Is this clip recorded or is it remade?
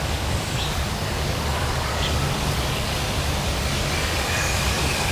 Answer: remade